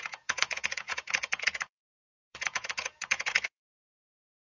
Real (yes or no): no